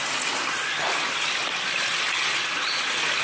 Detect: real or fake real